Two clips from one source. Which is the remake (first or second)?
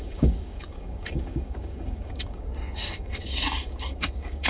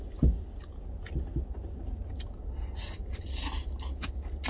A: first